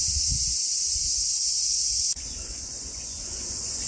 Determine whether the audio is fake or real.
fake